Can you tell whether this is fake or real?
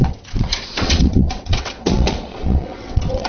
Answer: fake